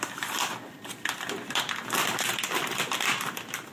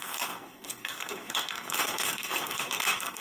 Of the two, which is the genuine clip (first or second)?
first